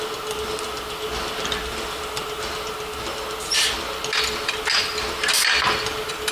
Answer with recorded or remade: recorded